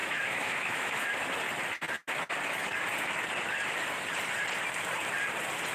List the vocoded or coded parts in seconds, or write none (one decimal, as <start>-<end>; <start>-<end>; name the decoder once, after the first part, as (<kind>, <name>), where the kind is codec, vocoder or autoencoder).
0.0-1.2 (autoencoder, DAC-VAE)